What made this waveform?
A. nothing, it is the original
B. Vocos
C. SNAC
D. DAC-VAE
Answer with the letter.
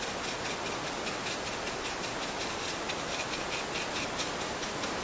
A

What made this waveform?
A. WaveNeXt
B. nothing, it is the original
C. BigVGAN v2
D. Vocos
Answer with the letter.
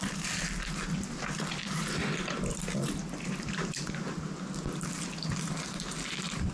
B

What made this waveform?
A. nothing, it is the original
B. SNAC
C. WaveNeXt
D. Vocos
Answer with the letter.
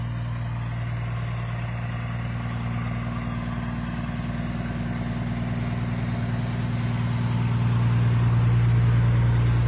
A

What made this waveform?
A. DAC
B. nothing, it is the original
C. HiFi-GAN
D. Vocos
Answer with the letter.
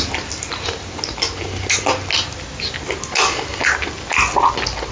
B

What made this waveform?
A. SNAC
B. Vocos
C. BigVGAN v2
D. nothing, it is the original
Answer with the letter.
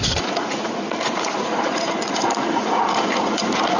B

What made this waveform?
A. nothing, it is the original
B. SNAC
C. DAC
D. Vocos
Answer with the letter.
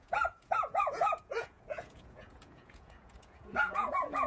D